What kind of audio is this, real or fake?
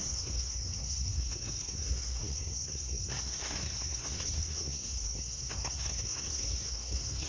fake